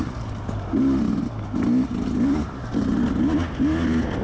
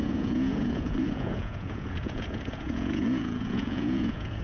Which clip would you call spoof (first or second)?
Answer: second